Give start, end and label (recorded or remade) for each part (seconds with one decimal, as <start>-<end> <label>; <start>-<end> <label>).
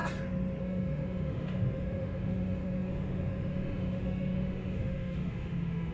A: 0.0-0.6 recorded; 0.6-5.9 remade